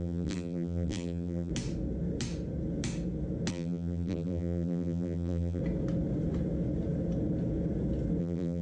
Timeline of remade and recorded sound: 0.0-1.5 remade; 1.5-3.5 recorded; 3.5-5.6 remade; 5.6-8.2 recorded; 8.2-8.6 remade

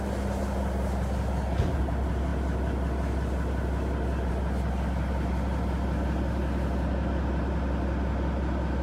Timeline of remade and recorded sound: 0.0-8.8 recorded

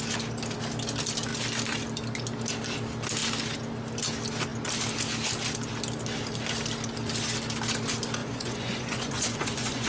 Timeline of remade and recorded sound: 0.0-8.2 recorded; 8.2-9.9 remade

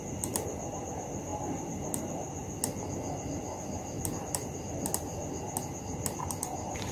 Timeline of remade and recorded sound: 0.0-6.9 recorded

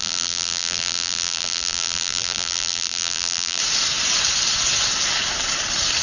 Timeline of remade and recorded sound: 0.0-3.6 remade; 3.6-6.0 recorded

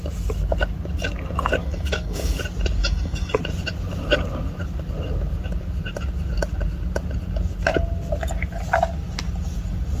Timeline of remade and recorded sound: 0.0-1.6 recorded; 1.6-2.4 remade; 2.4-2.8 recorded; 2.8-3.4 remade; 3.4-10.0 recorded